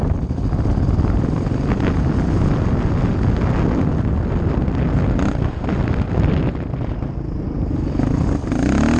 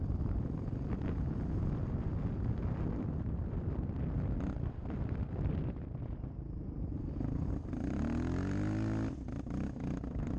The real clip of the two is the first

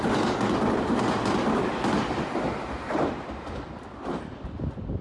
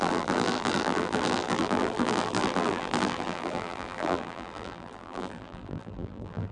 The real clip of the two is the first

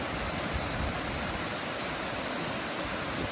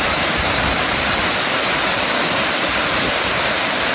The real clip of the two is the first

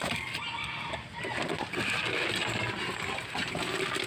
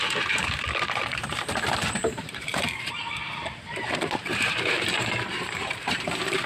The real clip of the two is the first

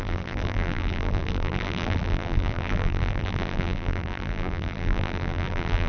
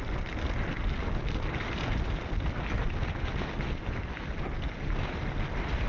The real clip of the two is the second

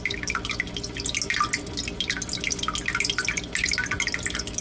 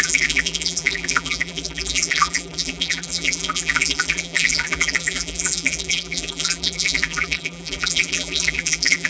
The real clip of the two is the first